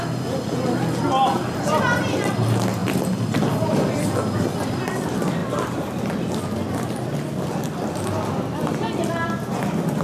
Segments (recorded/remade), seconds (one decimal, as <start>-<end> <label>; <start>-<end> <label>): 0.0-5.4 recorded; 5.4-6.0 remade; 6.0-10.0 recorded